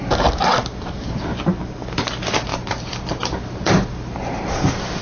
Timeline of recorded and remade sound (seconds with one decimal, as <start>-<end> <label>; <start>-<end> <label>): 0.0-2.5 recorded; 2.5-5.0 remade